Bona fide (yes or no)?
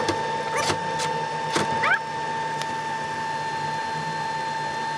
yes